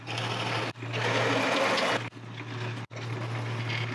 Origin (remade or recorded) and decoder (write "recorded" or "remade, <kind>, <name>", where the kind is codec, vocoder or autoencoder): recorded